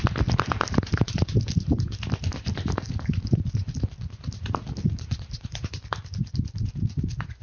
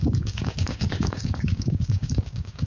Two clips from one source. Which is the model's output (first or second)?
second